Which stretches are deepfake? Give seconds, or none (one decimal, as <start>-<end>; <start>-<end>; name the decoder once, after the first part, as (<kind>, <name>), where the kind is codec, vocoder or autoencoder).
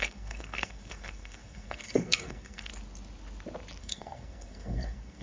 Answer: 0.0-2.7 (codec, SNAC); 3.8-5.2